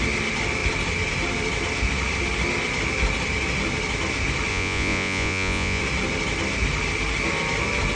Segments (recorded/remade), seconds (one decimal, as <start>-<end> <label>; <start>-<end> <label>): 0.0-4.5 recorded; 4.5-5.8 remade; 5.8-8.0 recorded

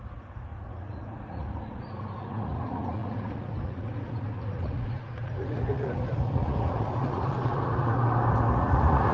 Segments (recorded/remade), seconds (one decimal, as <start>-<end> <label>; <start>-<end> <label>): 0.0-8.0 remade; 8.0-8.5 recorded; 8.5-9.1 remade

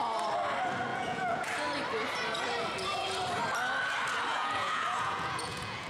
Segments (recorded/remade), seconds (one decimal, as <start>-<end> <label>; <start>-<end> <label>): 0.0-0.9 recorded; 0.9-1.5 remade; 1.5-4.3 recorded; 4.3-5.9 remade

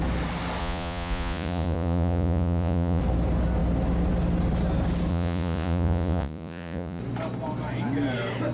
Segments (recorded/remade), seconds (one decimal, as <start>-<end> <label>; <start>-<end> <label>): 0.0-0.6 recorded; 0.6-3.0 remade; 3.0-5.1 recorded; 5.1-7.0 remade; 7.0-8.5 recorded